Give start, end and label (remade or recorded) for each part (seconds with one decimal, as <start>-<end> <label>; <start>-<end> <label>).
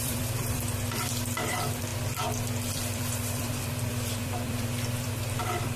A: 0.0-1.9 remade; 1.9-2.7 recorded; 2.7-5.8 remade